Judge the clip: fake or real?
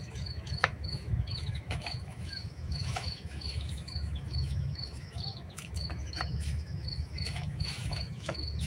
fake